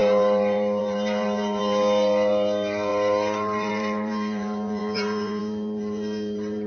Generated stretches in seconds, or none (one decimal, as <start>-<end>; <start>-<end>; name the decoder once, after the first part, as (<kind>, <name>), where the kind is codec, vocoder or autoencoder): 0.0-6.7 (vocoder, BigVGAN v2)